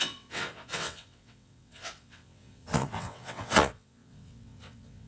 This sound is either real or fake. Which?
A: fake